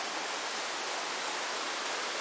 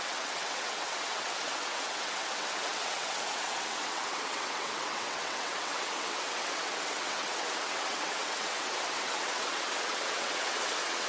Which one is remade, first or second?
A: second